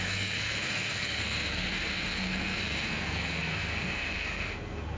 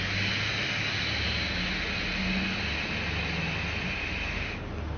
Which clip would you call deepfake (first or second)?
first